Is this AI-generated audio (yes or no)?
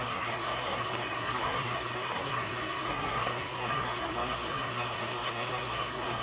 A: yes